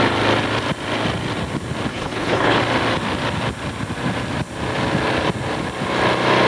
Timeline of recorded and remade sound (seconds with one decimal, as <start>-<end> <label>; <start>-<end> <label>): 0.0-1.9 recorded; 1.9-2.6 remade; 2.6-6.5 recorded